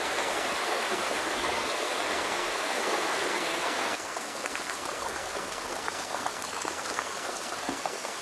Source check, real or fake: fake